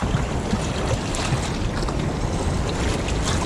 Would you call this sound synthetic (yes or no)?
no